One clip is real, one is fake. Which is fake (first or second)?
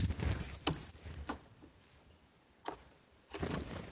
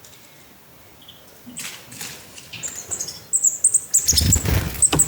first